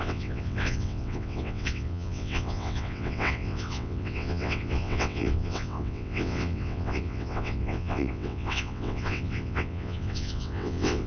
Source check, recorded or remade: remade